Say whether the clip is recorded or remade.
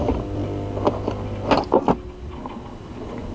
recorded